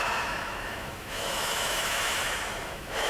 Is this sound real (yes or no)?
no